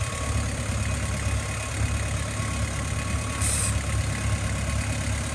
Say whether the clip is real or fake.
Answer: real